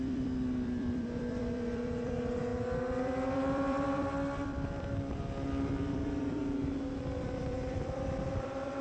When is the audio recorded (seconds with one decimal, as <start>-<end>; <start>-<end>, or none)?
2.5-3.0; 6.4-7.0